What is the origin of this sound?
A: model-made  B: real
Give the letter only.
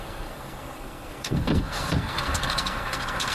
A